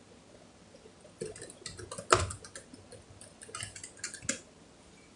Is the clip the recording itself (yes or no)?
yes